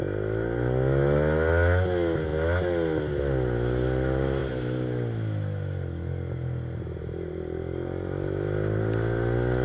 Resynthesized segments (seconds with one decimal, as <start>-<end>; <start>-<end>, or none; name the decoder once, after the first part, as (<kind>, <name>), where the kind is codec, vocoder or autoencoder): none